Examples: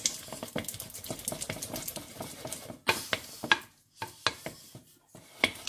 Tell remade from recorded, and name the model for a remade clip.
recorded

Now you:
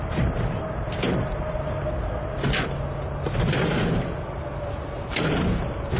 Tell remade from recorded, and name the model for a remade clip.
recorded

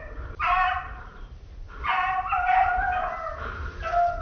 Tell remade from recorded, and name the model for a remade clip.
recorded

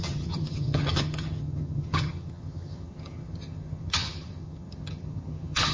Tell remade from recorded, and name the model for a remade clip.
remade, vocoder, HiFi-GAN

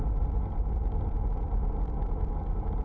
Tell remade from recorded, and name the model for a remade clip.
recorded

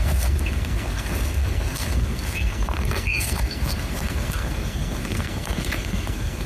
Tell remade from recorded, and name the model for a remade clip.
remade, codec, SNAC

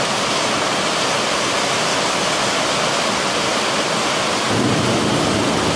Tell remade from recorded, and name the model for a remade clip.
recorded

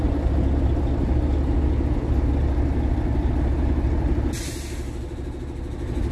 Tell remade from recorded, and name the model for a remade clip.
recorded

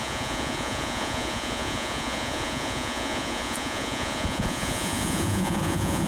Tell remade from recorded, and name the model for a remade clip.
remade, vocoder, Vocos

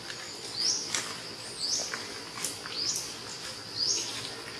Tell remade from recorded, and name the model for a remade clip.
recorded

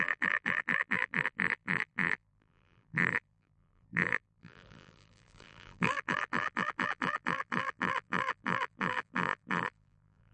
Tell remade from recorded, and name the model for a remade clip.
remade, vocoder, BigVGAN v2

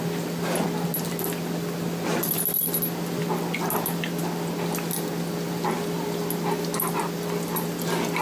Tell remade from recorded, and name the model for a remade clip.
recorded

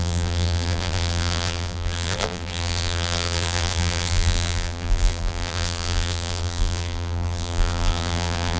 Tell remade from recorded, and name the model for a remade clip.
remade, vocoder, BigVGAN v2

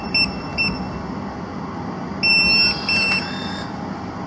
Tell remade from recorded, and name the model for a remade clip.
recorded